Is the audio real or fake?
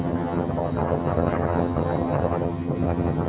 fake